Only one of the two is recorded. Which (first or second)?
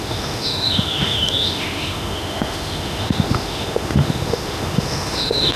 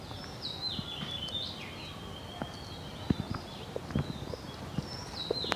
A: second